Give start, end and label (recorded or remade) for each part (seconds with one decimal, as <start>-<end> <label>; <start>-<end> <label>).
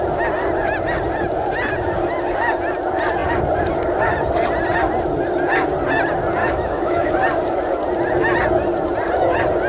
0.0-6.4 recorded; 6.4-7.1 remade; 7.1-9.7 recorded